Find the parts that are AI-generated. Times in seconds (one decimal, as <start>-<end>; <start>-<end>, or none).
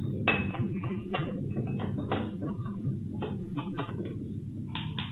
0.5-1.4; 2.3-2.9; 3.4-3.9